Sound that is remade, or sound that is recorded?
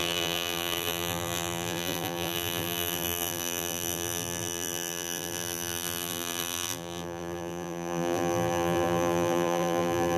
remade